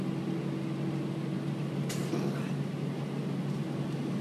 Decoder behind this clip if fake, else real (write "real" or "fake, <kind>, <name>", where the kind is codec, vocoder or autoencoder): real